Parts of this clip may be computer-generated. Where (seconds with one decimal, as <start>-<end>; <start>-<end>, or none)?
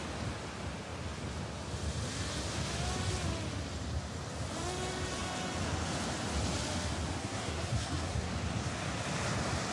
7.2-8.3